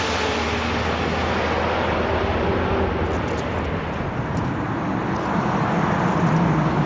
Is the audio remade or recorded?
recorded